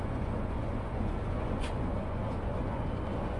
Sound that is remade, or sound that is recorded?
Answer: remade